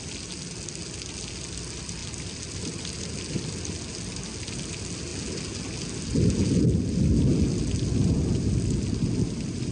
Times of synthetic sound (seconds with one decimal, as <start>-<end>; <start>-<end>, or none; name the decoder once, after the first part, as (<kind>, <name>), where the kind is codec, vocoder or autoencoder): none